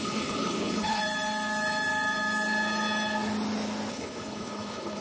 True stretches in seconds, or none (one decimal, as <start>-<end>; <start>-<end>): 1.0-3.9